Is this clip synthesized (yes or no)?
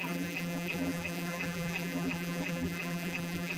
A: yes